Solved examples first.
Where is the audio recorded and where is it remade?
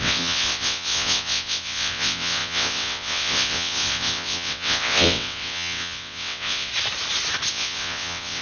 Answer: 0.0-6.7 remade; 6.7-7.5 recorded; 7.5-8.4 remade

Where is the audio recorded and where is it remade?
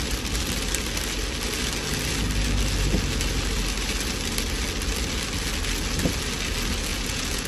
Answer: 0.0-6.9 recorded; 6.9-7.5 remade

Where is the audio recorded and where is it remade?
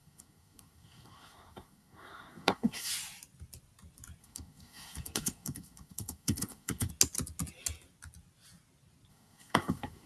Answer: 0.0-2.9 remade; 2.9-4.2 recorded; 4.2-6.9 remade; 6.9-9.1 recorded; 9.1-10.1 remade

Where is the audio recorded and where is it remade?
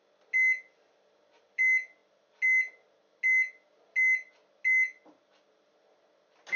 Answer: 0.0-6.6 recorded